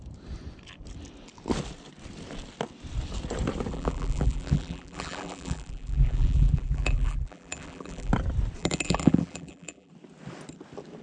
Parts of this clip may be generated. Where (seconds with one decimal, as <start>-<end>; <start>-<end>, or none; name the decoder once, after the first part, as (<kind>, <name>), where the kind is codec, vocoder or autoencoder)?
3.7-8.1 (vocoder, BigVGAN v2); 8.6-9.9